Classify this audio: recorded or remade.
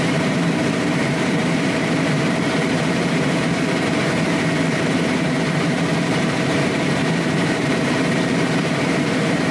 remade